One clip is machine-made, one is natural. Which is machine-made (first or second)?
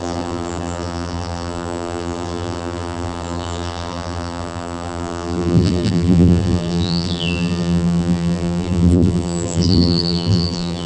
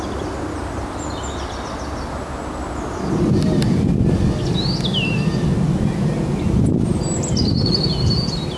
first